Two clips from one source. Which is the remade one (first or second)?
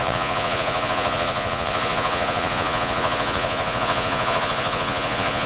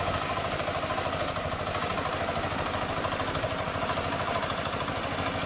first